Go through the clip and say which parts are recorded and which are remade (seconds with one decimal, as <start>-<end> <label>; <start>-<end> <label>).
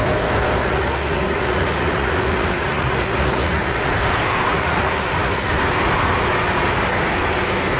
0.0-0.6 recorded; 0.6-3.9 remade; 3.9-4.5 recorded; 4.5-5.5 remade; 5.5-7.8 recorded